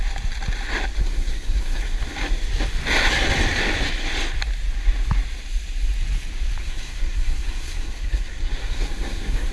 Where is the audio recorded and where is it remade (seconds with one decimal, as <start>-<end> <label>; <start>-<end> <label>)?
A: 0.0-1.0 recorded; 1.0-2.0 remade; 2.0-6.6 recorded; 6.6-9.5 remade